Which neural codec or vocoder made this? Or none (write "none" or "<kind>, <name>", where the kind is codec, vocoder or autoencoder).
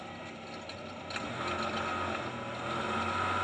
none